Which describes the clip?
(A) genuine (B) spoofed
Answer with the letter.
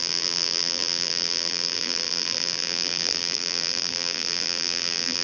B